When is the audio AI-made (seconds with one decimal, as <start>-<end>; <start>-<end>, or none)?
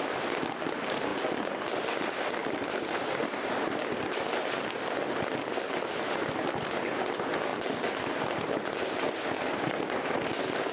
2.4-3.4